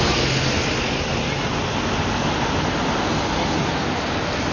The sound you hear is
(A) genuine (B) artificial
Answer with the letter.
A